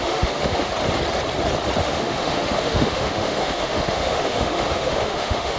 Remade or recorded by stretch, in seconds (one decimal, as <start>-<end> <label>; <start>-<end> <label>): 0.0-0.7 remade; 0.7-1.8 recorded; 1.8-5.6 remade